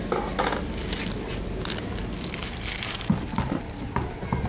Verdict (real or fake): real